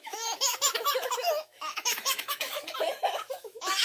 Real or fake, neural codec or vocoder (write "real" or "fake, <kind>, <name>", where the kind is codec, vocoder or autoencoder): fake, autoencoder, DAC-VAE